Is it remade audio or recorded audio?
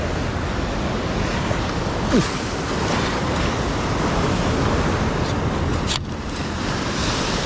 recorded